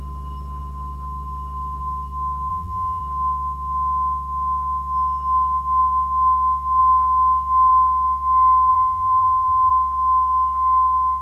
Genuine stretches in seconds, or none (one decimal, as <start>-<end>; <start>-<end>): 0.0-2.5; 3.0-8.7; 9.7-11.2